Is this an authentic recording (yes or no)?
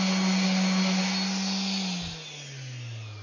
yes